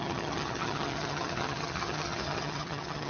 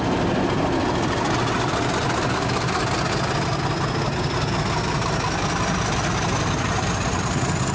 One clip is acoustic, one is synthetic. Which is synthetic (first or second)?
first